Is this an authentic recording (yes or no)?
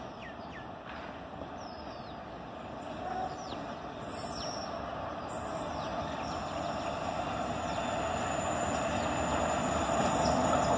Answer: yes